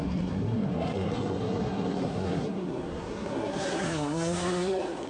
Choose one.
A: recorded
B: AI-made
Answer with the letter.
B